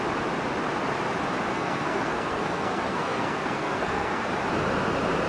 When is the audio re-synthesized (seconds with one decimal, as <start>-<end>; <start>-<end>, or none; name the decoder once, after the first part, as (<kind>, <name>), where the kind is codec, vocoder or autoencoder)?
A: 1.5-4.3 (codec, SNAC)